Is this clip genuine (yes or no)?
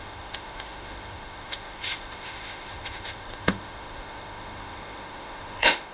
no